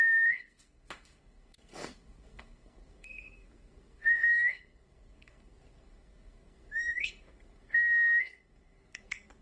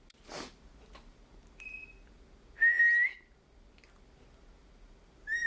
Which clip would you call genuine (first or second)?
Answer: second